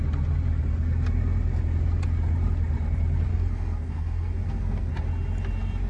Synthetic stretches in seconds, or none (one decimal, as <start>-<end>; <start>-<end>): 3.3-4.9